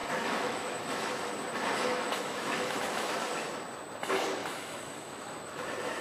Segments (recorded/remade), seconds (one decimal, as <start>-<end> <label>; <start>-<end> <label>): 0.0-1.3 remade; 1.3-1.9 recorded; 1.9-3.3 remade; 3.3-4.4 recorded; 4.4-5.6 remade; 5.6-6.0 recorded